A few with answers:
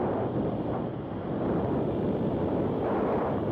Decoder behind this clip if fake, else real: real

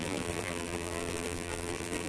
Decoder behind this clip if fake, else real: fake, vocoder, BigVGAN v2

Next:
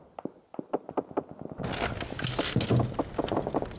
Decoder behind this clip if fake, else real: real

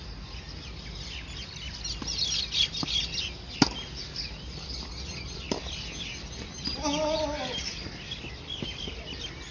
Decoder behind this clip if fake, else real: real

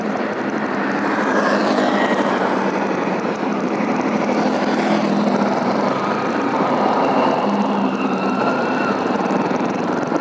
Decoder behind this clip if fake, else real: fake, vocoder, BigVGAN v2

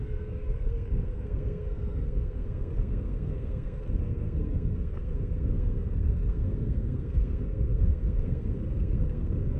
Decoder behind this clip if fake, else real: fake, codec, SNAC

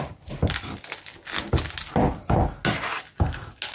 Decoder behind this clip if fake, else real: real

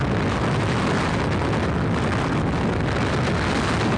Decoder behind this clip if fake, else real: real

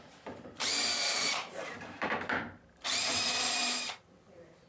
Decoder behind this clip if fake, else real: fake, vocoder, BigVGAN v2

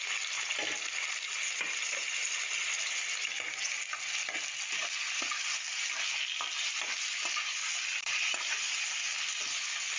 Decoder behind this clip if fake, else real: real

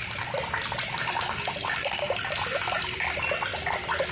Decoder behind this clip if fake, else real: real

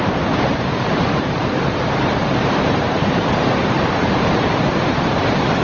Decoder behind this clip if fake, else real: fake, vocoder, BigVGAN v2